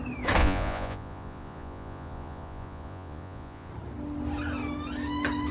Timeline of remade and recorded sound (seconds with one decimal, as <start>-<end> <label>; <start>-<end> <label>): 0.0-0.4 recorded; 0.4-3.7 remade; 3.7-5.5 recorded